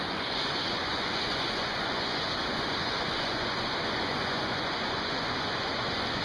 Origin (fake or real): fake